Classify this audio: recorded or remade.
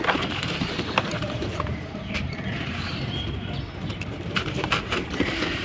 remade